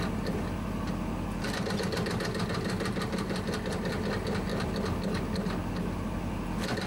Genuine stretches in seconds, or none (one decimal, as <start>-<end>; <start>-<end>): 0.0-6.9